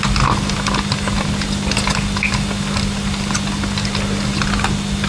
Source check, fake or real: real